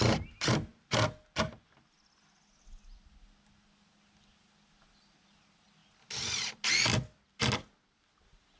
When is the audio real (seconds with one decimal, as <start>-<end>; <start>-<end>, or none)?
0.0-8.6